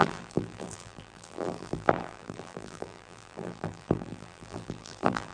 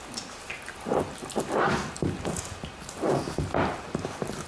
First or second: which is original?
second